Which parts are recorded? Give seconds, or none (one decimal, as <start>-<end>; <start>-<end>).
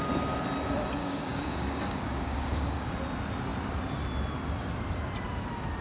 0.0-1.0; 2.9-5.8